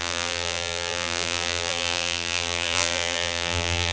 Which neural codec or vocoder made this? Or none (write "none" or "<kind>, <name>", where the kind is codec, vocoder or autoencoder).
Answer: vocoder, BigVGAN v2